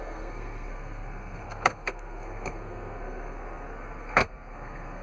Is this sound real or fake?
fake